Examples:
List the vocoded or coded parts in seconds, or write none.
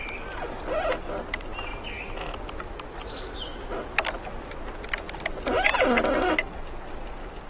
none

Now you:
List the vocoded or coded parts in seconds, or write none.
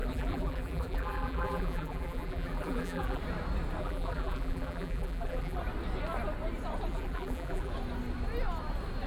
0.0-3.2 (vocoder, BigVGAN v2); 3.8-5.6; 6.9-7.7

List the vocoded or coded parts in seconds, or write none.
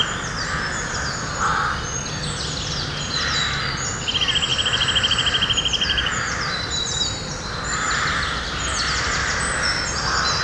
4.5-8.1 (vocoder, BigVGAN v2)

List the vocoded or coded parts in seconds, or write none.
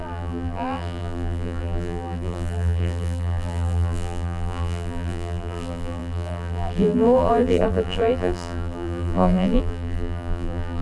0.0-10.8 (vocoder, BigVGAN v2)